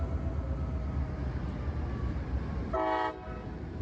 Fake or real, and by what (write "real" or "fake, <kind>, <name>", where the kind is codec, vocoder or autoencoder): real